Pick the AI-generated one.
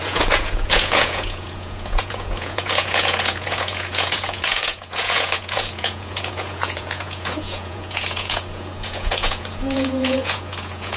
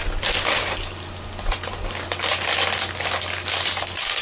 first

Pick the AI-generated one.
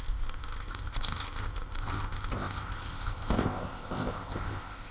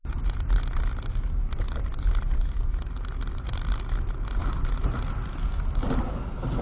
first